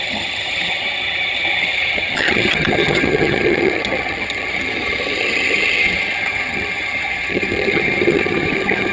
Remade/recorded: remade